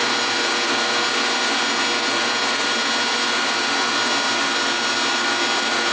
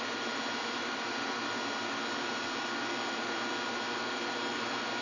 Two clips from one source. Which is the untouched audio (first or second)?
first